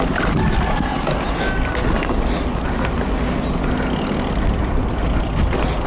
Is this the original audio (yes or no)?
yes